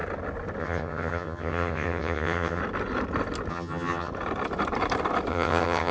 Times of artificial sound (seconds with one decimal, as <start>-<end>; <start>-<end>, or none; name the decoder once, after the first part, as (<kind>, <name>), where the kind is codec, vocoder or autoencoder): 0.6-2.6 (vocoder, HiFi-GAN); 3.5-4.1; 5.3-5.9